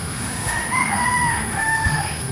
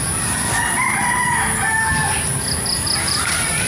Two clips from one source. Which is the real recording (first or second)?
second